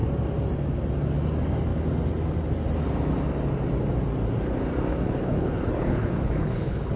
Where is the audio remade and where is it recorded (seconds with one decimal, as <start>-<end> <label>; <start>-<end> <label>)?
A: 0.0-4.9 recorded; 4.9-7.0 remade